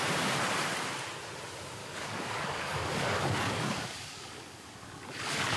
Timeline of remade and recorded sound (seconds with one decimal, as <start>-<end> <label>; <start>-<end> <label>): 0.0-1.8 recorded; 1.8-5.6 remade